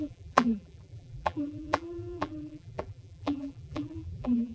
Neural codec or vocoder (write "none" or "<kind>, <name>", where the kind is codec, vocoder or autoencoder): vocoder, BigVGAN v2